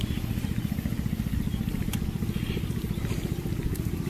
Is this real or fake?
real